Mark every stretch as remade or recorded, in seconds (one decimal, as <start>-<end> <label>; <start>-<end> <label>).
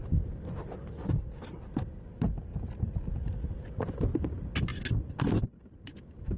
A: 0.0-6.4 recorded